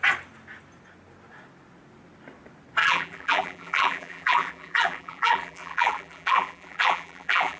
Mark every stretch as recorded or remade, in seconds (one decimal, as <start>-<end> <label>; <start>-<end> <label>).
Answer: 0.0-2.8 recorded; 2.8-7.6 remade